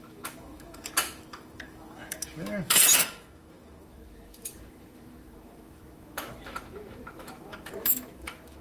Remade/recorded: remade